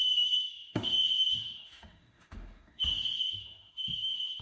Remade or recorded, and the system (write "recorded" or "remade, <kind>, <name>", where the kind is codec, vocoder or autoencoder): remade, autoencoder, DAC-VAE